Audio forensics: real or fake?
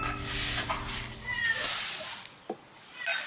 real